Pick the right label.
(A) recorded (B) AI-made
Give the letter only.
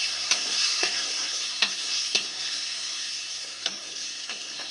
B